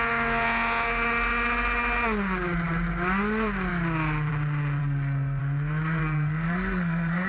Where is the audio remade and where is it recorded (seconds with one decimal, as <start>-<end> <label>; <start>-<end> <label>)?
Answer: 0.0-4.8 recorded; 4.8-5.4 remade; 5.4-6.0 recorded; 6.0-7.3 remade